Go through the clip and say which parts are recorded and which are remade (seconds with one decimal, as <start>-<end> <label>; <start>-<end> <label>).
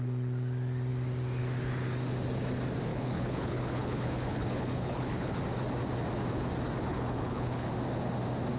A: 0.0-2.9 recorded; 2.9-5.4 remade; 5.4-6.9 recorded; 6.9-7.7 remade; 7.7-8.6 recorded